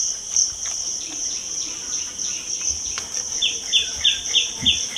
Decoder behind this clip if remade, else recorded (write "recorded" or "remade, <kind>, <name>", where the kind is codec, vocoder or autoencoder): remade, vocoder, BigVGAN v2